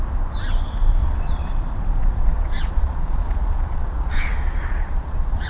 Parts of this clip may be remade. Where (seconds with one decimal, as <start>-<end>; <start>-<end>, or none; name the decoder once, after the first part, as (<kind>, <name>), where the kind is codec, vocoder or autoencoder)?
1.0-1.5 (vocoder, Vocos); 2.0-5.5